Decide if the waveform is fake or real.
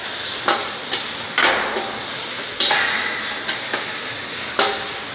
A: real